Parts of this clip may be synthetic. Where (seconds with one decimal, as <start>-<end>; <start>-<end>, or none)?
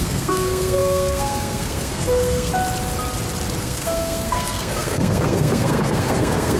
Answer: 0.0-2.5; 3.6-6.6